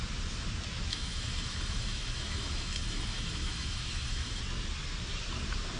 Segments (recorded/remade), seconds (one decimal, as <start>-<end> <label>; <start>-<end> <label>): 0.0-0.9 recorded; 0.9-4.4 remade; 4.4-5.8 recorded